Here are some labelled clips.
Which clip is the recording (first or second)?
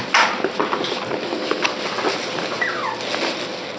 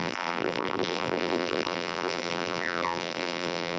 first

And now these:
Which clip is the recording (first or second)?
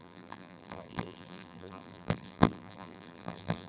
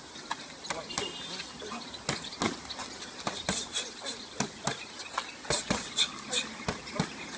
second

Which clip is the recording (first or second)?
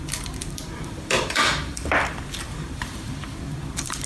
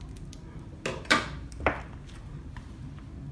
second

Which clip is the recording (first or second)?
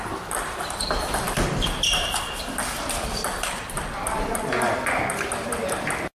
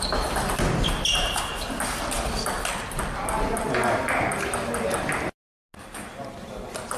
second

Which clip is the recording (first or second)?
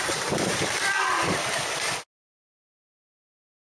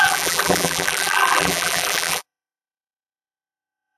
first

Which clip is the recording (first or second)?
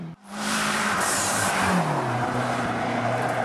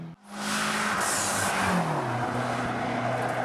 second